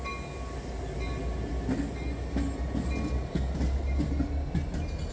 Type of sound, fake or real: real